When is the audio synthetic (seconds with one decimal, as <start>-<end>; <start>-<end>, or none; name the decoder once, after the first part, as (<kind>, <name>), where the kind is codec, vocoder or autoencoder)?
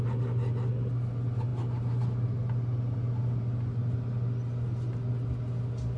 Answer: none